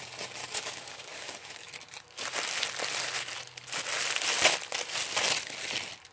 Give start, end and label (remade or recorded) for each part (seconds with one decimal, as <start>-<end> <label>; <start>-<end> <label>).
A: 0.0-0.4 recorded; 0.4-1.7 remade; 1.7-6.1 recorded